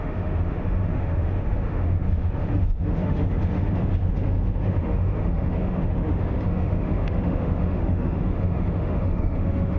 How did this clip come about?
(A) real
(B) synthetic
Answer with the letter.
B